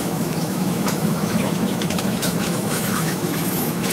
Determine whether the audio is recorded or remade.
remade